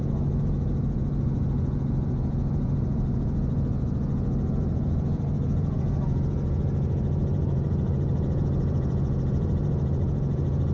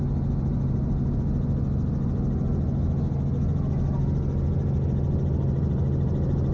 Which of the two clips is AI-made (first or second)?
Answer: first